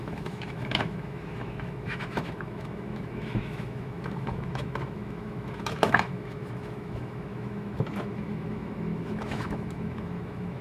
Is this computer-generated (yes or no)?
yes